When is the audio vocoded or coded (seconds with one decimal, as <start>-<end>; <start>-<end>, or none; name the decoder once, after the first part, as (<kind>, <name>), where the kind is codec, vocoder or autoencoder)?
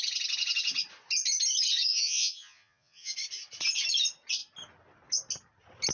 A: 1.9-3.1 (vocoder, Vocos)